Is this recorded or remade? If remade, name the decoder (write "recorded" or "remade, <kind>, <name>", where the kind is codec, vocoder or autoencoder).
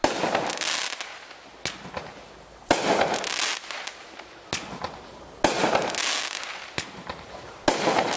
recorded